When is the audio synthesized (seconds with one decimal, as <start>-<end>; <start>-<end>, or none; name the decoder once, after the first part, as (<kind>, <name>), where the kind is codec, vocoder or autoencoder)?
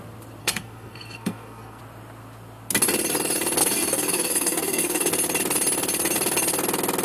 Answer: 0.4-1.8 (codec, SNAC); 3.6-5.1